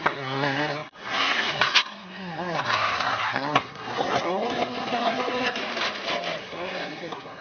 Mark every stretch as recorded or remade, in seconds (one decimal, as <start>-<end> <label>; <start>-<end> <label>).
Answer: 0.0-5.6 remade; 5.6-6.4 recorded; 6.4-7.4 remade